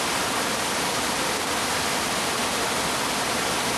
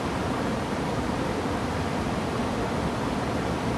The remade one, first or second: second